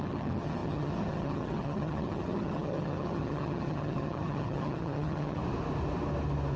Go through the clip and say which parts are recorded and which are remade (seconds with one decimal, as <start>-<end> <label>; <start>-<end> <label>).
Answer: 0.0-5.4 remade; 5.4-6.6 recorded